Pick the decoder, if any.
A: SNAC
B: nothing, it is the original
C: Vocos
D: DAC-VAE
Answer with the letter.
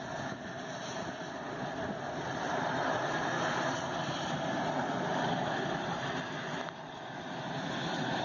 B